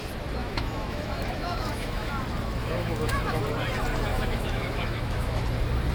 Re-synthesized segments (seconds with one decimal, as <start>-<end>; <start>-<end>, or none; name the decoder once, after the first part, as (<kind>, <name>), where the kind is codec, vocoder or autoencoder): 0.4-2.1 (autoencoder, DAC-VAE); 2.6-3.4; 4.1-5.4